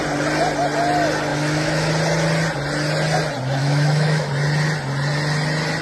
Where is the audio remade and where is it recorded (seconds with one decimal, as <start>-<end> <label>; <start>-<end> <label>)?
0.0-1.3 recorded; 1.3-1.9 remade; 1.9-3.6 recorded; 3.6-4.3 remade; 4.3-5.8 recorded